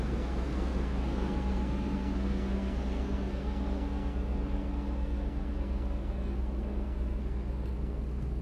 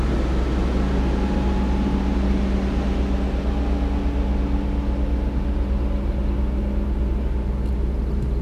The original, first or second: second